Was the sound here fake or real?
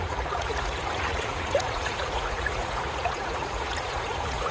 fake